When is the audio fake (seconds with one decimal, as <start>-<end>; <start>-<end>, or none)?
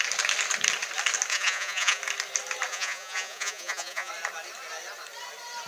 1.3-2.0; 2.7-4.1